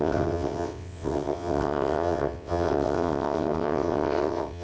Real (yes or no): no